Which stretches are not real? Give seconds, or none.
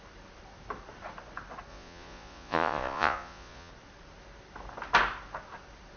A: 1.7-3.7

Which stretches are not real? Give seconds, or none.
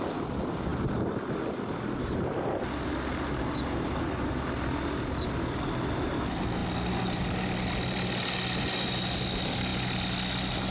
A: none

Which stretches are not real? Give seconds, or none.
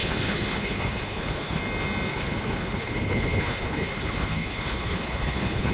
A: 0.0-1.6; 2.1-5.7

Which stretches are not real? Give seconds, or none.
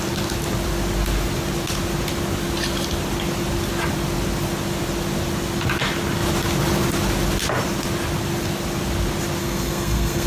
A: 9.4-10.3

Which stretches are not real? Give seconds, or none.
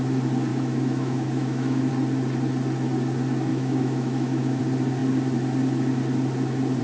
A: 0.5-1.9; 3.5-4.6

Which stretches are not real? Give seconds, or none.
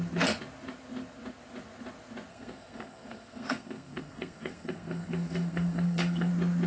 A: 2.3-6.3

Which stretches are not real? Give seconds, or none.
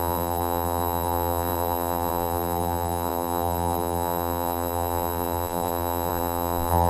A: 0.0-6.9